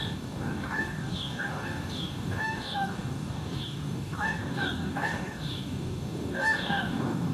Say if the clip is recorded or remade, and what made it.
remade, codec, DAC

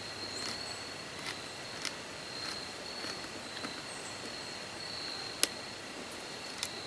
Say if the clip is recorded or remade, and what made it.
recorded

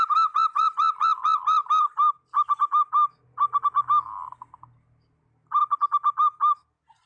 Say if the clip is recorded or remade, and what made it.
recorded